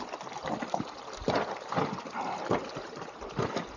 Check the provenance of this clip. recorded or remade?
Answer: recorded